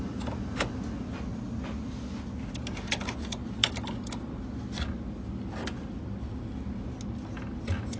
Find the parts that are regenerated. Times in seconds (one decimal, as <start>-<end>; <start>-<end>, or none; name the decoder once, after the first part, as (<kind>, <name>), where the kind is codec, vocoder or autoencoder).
none